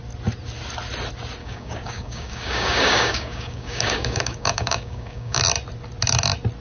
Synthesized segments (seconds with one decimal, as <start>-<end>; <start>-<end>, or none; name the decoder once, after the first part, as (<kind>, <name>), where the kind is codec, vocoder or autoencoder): 1.4-5.4 (codec, DAC)